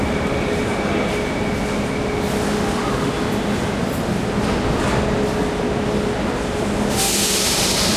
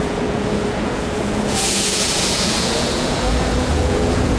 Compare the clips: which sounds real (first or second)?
first